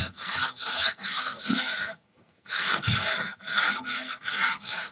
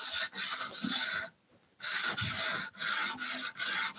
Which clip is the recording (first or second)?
second